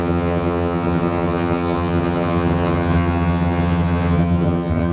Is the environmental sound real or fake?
fake